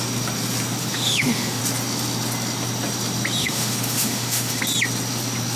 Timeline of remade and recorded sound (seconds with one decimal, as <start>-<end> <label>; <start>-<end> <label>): 0.0-0.8 recorded; 0.8-1.6 remade; 1.6-3.4 recorded; 3.4-4.6 remade; 4.6-5.6 recorded